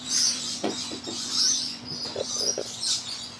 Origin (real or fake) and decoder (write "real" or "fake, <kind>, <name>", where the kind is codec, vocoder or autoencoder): fake, vocoder, Vocos